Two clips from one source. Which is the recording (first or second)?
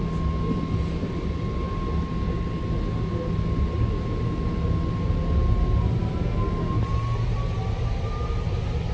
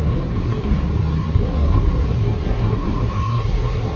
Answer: first